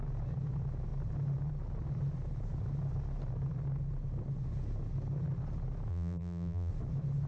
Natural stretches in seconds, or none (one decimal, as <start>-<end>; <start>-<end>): 0.0-5.9; 6.7-7.3